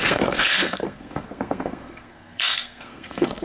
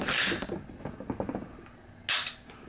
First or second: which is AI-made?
first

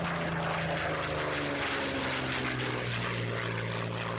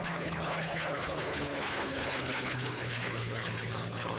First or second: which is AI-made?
second